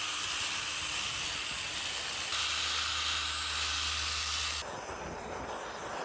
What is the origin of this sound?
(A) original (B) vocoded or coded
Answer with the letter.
A